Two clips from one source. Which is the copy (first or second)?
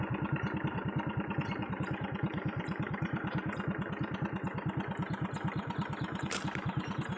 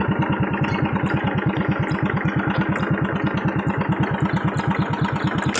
first